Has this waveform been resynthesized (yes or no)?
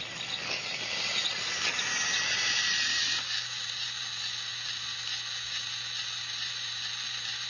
no